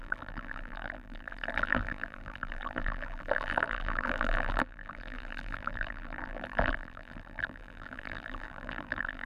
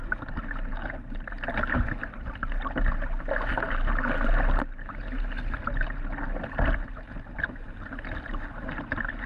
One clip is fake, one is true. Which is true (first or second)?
second